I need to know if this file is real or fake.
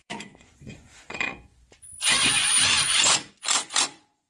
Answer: fake